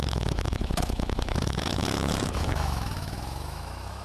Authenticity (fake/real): fake